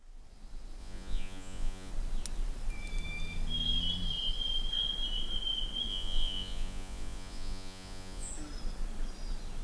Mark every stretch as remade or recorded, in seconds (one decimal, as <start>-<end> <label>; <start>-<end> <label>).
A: 0.0-0.8 recorded; 0.8-1.9 remade; 1.9-5.9 recorded; 5.9-8.3 remade; 8.3-9.6 recorded